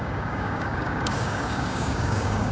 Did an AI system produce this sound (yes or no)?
yes